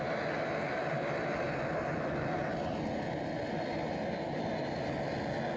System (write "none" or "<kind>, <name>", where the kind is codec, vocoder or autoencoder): none